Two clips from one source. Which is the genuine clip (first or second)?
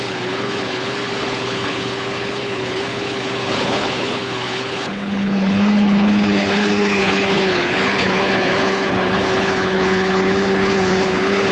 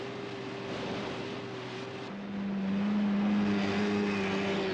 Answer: second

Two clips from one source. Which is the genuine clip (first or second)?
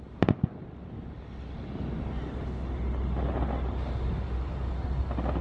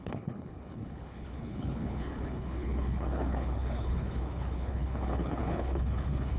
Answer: first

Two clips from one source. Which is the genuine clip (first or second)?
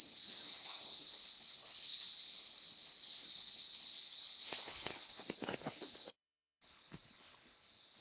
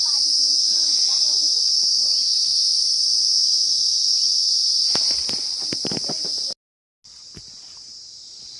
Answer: second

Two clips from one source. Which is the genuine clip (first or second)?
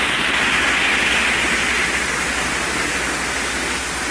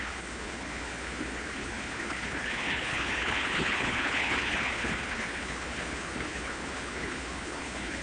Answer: first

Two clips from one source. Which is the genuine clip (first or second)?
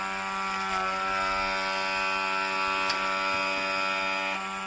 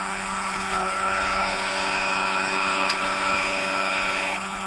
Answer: first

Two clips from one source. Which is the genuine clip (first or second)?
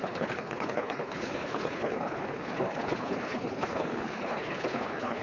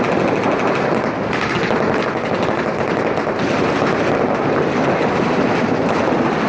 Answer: second